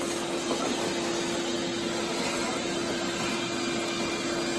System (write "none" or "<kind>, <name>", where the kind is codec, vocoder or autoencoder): none